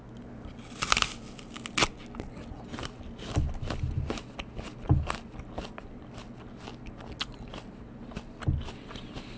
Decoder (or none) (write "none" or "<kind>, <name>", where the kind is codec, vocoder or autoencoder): none